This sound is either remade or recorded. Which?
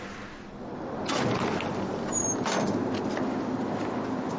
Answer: recorded